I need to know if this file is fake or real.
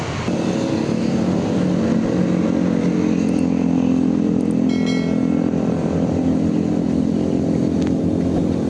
real